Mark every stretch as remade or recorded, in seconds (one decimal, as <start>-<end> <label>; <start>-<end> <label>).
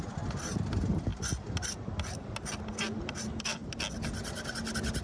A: 0.0-5.0 recorded